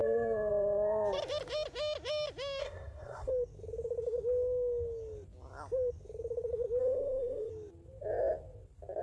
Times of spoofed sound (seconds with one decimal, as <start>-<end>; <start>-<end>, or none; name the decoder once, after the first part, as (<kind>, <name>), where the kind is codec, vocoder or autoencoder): 2.6-3.3 (codec, SNAC); 6.8-7.5